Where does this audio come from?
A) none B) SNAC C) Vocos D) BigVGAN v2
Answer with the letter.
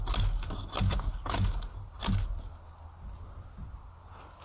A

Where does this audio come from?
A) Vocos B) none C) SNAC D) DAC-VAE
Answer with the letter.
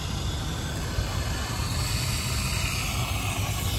B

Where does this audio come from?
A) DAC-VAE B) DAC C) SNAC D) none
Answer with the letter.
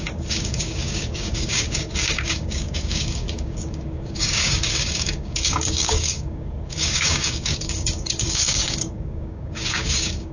B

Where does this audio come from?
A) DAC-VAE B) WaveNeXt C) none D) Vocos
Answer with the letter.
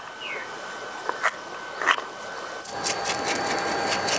C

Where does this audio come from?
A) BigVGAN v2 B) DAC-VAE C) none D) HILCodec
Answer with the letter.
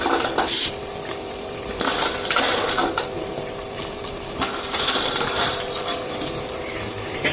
A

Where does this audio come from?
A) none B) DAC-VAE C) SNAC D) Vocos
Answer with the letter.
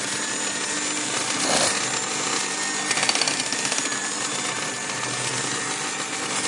A